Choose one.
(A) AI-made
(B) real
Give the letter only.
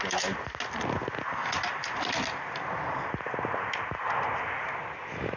B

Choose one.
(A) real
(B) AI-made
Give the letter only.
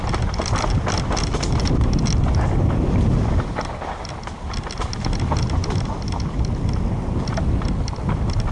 A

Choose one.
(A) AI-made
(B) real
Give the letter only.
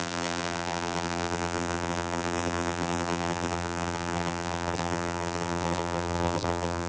A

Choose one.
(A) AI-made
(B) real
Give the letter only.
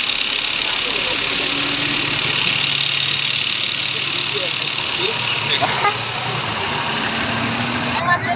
B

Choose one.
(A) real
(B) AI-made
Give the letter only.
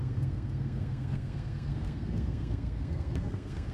B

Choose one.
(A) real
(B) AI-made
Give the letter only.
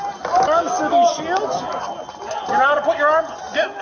A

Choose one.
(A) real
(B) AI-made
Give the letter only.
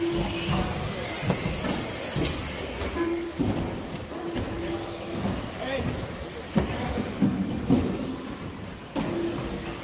A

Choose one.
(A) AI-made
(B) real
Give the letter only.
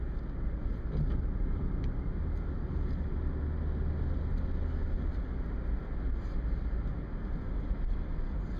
B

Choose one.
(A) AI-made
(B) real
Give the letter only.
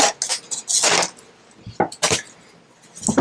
B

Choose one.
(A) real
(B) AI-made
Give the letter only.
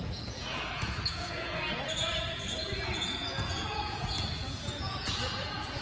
B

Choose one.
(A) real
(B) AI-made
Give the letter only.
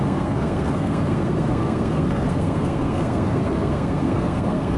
B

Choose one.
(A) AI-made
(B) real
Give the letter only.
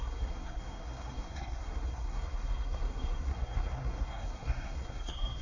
A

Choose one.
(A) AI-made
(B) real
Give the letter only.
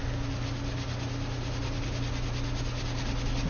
B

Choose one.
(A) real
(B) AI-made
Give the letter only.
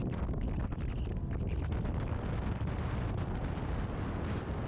A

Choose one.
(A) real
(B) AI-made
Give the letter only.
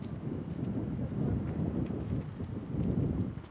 A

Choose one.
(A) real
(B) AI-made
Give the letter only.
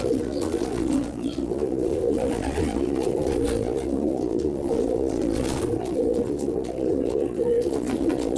B